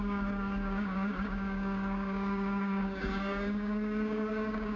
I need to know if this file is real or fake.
fake